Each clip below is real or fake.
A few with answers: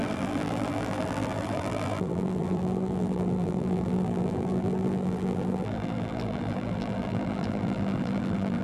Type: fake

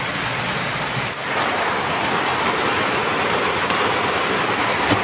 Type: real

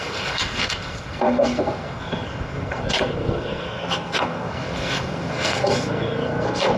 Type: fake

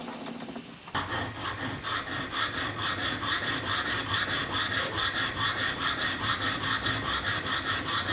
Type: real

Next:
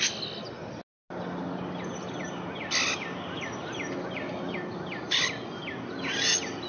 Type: real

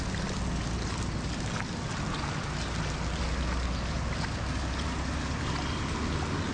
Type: real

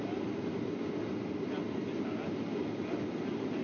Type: real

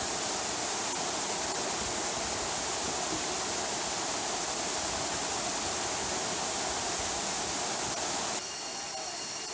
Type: real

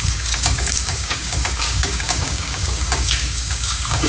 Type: fake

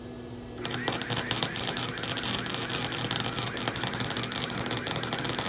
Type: real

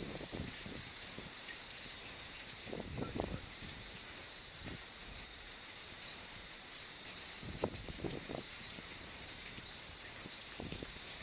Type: fake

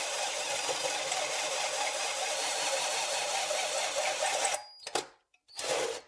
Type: real